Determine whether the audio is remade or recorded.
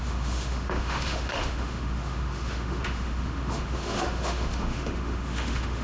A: remade